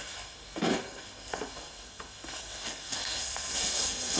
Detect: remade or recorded remade